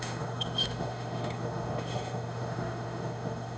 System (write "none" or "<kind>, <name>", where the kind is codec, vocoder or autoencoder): autoencoder, DAC-VAE